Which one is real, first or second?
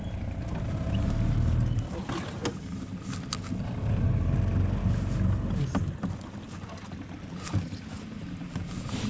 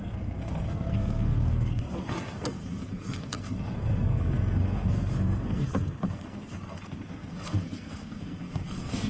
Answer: first